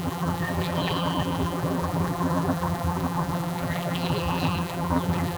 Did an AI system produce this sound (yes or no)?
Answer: yes